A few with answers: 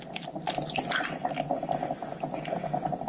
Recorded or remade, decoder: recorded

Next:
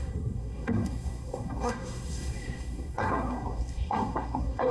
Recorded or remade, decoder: remade, codec, SNAC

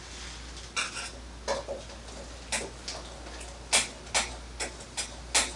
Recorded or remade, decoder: recorded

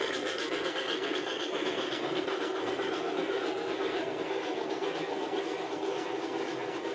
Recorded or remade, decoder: remade, codec, SNAC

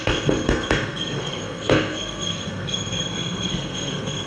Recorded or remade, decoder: remade, codec, SNAC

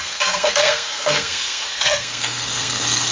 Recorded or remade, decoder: remade, codec, SNAC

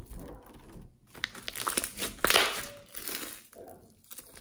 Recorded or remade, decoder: recorded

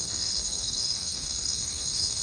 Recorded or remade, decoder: remade, codec, SNAC